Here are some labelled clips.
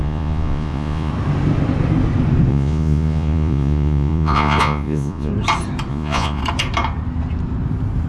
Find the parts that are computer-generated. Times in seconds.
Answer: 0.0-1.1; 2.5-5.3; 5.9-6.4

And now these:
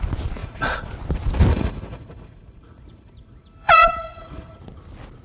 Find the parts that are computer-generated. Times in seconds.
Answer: 0.4-0.9; 1.5-4.6

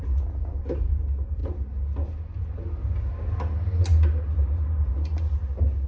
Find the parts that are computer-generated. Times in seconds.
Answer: 0.0-0.6

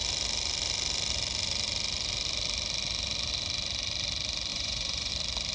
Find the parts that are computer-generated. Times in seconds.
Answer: 4.5-5.1

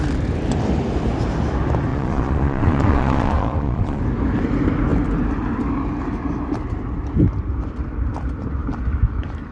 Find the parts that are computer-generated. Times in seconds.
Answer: 1.9-4.0